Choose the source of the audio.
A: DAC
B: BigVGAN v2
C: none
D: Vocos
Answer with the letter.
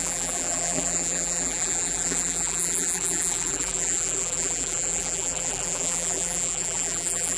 B